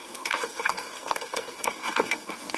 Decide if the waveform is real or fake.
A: fake